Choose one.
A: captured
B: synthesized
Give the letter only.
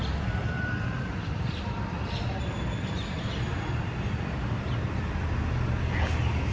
B